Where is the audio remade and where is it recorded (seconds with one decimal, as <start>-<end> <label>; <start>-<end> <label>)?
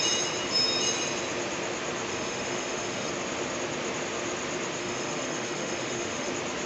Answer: 0.0-2.1 recorded; 2.1-3.1 remade; 3.1-4.8 recorded; 4.8-6.3 remade; 6.3-6.7 recorded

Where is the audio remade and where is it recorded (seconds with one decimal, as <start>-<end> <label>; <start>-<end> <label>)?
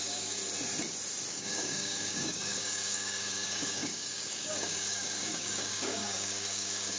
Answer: 0.0-0.4 remade; 0.4-1.3 recorded; 1.3-7.0 remade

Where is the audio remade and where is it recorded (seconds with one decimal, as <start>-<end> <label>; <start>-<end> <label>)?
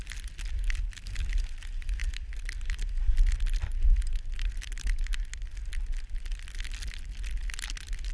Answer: 0.0-8.1 recorded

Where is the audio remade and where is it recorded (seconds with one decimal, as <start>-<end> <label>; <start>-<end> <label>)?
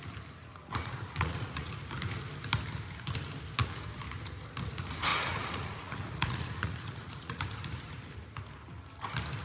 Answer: 0.0-0.4 recorded; 0.4-1.7 remade; 1.7-5.1 recorded; 5.1-7.4 remade; 7.4-9.4 recorded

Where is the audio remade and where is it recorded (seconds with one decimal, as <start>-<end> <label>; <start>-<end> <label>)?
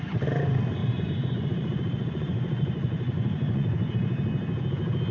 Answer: 0.0-0.8 recorded; 0.8-3.9 remade; 3.9-5.1 recorded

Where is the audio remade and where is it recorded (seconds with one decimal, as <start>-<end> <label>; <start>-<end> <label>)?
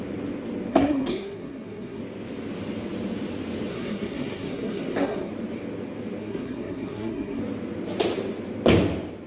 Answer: 0.0-0.7 recorded; 0.7-2.0 remade; 2.0-3.7 recorded; 3.7-5.3 remade; 5.3-6.2 recorded; 6.2-7.4 remade; 7.4-9.3 recorded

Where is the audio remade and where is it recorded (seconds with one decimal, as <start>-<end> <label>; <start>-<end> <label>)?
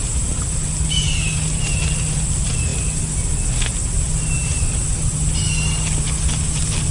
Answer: 0.0-6.9 recorded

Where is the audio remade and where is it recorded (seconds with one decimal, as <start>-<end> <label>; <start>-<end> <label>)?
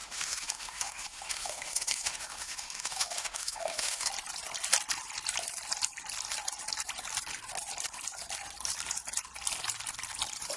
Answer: 0.0-4.1 remade; 4.1-10.6 recorded